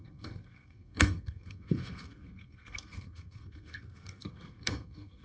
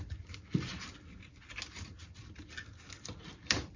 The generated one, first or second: first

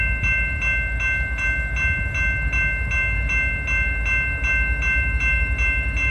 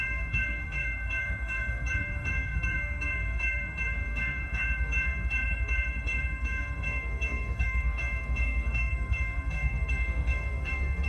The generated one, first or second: second